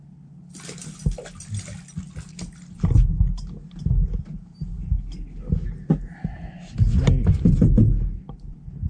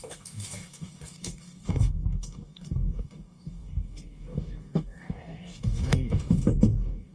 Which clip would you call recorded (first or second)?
first